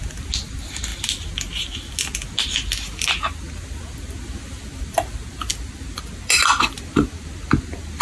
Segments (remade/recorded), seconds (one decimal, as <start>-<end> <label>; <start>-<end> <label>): 0.0-8.0 recorded